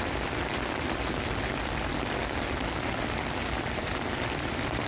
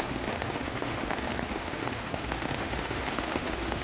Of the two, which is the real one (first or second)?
first